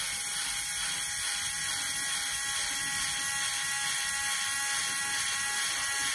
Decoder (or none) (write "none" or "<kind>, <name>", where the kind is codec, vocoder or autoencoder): none